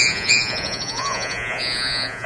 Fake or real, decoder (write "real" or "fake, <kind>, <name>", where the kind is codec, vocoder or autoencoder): fake, vocoder, Vocos